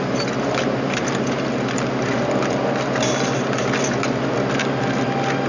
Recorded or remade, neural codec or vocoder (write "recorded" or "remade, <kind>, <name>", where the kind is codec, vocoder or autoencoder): recorded